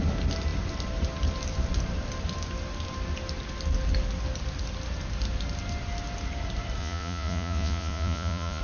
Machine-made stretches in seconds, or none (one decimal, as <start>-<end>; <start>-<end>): 6.8-8.6